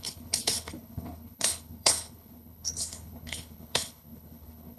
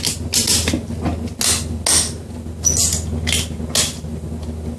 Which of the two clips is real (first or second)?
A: second